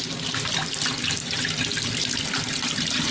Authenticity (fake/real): real